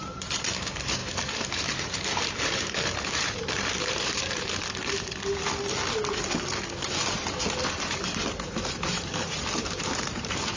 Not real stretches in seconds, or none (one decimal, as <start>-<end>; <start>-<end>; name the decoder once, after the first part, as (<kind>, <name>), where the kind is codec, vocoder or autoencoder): 0.0-4.5 (vocoder, BigVGAN v2); 7.7-10.6